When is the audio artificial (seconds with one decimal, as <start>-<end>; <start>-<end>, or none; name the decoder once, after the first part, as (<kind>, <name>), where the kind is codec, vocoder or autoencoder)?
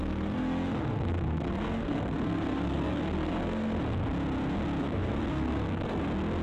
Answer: 0.0-3.8 (codec, SNAC); 4.8-6.0